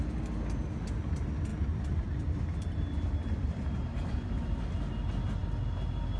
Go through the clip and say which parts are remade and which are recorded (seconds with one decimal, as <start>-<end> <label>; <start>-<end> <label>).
0.0-1.5 recorded; 1.5-4.6 remade; 4.6-6.2 recorded

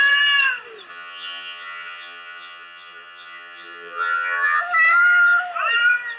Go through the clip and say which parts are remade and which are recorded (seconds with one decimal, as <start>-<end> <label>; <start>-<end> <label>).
0.0-0.9 recorded; 0.9-4.6 remade; 4.6-6.2 recorded

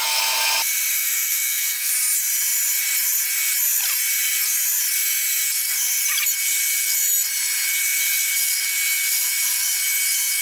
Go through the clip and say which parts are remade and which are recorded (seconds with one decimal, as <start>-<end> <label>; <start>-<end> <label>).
0.0-0.9 recorded; 0.9-1.9 remade; 1.9-10.4 recorded

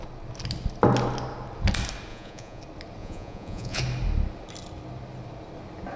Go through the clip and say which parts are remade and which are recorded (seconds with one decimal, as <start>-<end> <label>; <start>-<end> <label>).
0.0-2.1 recorded; 2.1-2.6 remade; 2.6-3.0 recorded; 3.0-3.8 remade; 3.8-6.0 recorded

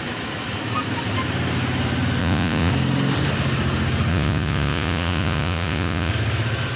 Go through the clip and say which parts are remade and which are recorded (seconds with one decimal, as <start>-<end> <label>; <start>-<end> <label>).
0.0-2.2 recorded; 2.2-2.7 remade; 2.7-4.1 recorded; 4.1-6.1 remade; 6.1-6.8 recorded